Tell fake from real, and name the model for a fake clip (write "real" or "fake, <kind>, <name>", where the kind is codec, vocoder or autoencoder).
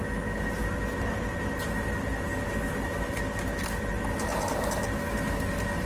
real